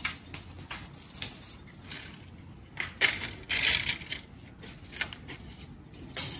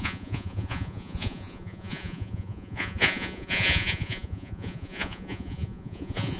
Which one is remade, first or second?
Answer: second